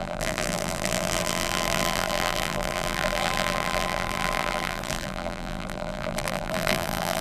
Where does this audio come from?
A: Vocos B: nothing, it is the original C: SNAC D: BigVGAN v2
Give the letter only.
D